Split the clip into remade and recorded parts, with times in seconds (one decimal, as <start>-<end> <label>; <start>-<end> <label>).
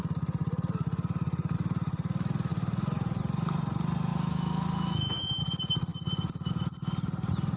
0.0-4.1 recorded; 4.1-5.4 remade; 5.4-7.6 recorded